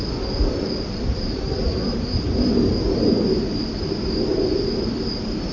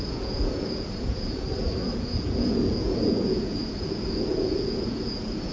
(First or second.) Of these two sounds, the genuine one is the first